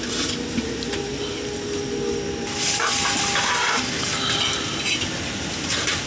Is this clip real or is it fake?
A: real